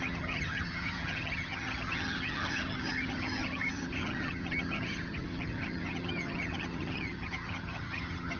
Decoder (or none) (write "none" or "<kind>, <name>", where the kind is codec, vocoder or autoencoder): vocoder, HiFi-GAN